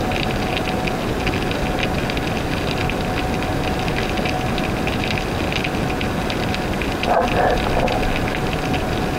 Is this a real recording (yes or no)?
yes